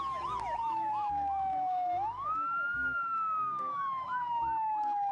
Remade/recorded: remade